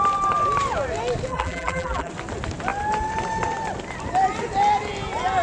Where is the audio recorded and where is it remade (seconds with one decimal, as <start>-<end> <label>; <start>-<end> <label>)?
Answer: 0.0-1.3 recorded; 1.3-2.1 remade; 2.1-5.4 recorded